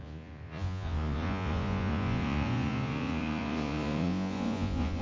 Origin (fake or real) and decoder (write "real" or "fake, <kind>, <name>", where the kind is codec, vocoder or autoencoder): fake, vocoder, Vocos